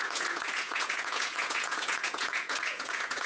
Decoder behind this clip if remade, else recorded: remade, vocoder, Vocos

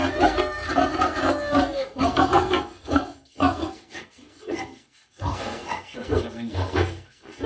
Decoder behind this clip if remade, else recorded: remade, codec, SNAC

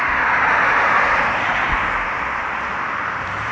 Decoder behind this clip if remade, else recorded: recorded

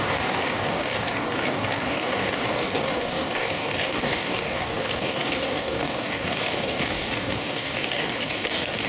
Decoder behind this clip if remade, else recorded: remade, codec, DAC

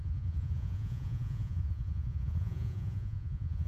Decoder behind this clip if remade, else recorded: remade, vocoder, Vocos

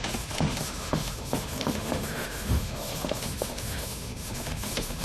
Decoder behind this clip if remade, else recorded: remade, autoencoder, DAC-VAE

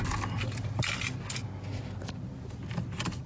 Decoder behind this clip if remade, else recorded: recorded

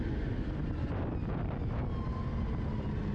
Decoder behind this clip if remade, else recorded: recorded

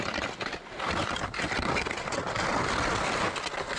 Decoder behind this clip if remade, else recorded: recorded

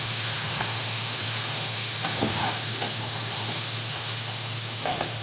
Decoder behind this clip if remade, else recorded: remade, autoencoder, DAC-VAE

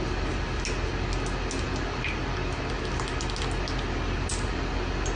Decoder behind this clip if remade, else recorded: recorded